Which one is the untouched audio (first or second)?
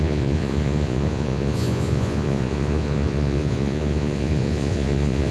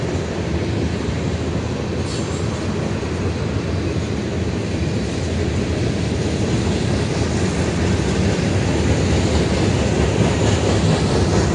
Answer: second